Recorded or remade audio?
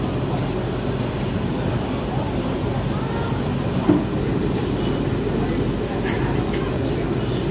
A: recorded